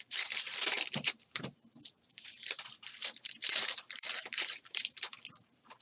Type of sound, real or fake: fake